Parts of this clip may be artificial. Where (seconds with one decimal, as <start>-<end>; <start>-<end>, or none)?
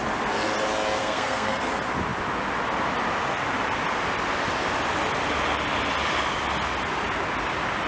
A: 1.0-1.7